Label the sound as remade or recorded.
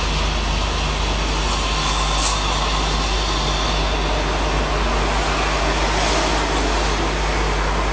recorded